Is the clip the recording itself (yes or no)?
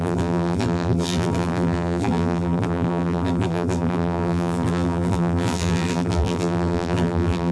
no